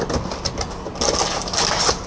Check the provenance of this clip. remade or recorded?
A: recorded